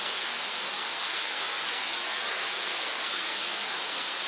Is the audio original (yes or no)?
no